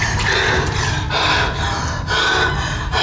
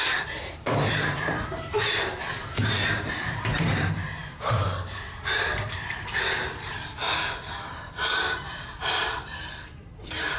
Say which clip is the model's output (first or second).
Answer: second